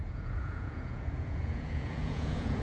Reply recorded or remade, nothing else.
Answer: remade